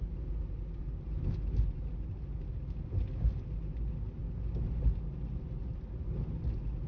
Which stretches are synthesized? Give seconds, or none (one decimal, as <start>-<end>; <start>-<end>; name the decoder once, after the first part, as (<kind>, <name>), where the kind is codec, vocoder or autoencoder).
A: none